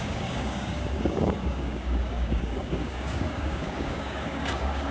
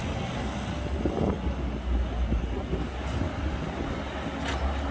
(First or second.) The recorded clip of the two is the second